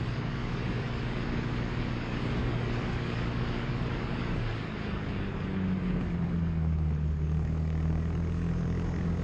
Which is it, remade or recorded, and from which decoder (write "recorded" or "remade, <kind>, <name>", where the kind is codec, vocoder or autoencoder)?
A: remade, codec, DAC